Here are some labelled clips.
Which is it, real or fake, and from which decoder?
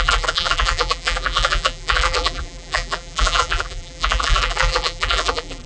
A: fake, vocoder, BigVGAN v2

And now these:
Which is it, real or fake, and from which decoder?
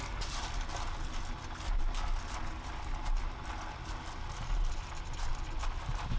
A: real